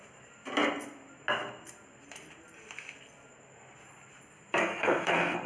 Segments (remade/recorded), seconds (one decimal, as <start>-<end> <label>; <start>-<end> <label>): 0.0-4.6 recorded; 4.6-5.5 remade